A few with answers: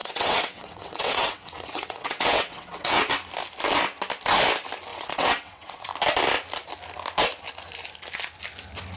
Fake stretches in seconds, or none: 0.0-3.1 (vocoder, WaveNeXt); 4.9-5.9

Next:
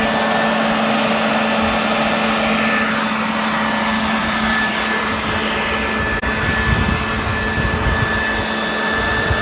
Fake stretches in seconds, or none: 4.2-4.7 (vocoder, BigVGAN v2)